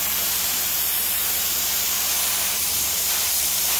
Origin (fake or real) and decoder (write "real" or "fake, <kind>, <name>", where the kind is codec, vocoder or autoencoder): fake, vocoder, BigVGAN v2